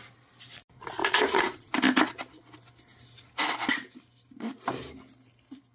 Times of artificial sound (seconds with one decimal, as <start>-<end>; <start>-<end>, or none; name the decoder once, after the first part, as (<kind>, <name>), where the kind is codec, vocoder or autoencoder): 1.0-1.7 (vocoder, Vocos)